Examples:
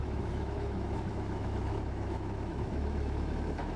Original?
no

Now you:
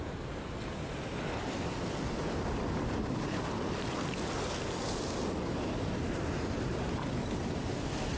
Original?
yes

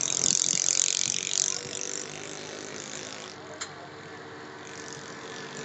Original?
yes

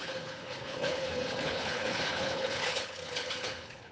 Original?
no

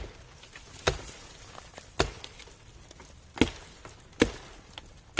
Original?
yes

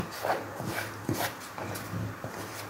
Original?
yes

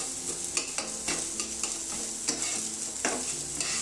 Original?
yes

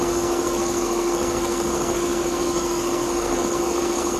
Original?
no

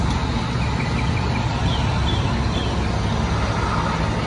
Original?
yes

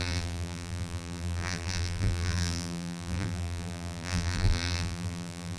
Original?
no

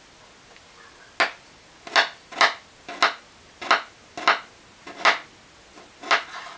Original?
yes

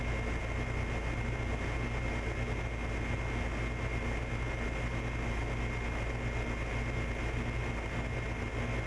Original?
yes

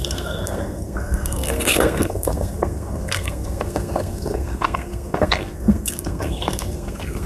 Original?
no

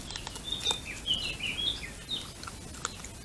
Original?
yes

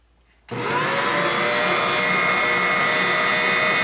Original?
yes